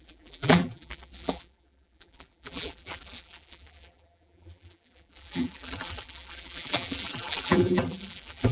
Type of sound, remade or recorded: remade